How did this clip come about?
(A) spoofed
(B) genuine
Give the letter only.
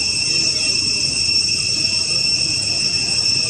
A